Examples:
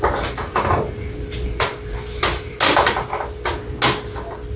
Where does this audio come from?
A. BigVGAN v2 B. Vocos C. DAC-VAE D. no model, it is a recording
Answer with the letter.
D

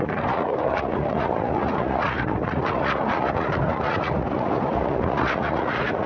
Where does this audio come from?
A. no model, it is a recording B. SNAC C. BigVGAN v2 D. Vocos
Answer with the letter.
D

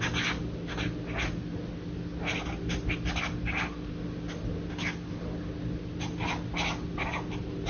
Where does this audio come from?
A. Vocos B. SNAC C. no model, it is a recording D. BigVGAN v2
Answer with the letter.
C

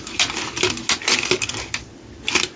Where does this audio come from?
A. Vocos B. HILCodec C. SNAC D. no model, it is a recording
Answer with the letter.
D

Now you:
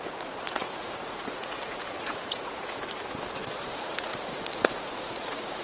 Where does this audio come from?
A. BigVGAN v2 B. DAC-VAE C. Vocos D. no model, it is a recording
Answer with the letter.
C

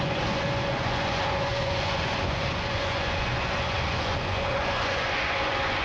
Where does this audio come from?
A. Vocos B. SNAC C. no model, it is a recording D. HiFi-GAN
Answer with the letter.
A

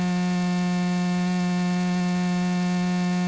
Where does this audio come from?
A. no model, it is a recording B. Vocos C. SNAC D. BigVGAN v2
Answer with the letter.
A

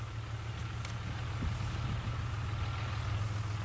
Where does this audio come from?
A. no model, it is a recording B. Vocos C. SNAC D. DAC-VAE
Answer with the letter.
A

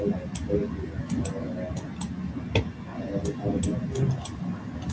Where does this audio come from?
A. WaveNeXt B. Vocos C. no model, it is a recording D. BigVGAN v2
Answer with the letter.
C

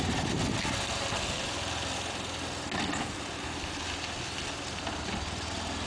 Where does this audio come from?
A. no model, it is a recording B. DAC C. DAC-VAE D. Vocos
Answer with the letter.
A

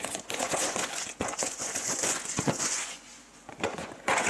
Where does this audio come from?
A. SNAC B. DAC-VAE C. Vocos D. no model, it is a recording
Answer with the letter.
C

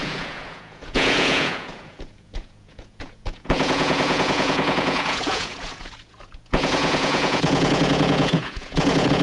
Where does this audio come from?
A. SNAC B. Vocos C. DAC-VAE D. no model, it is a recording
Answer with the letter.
B